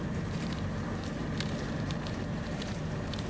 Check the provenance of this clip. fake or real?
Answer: fake